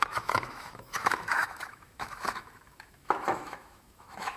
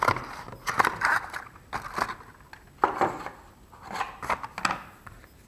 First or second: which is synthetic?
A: first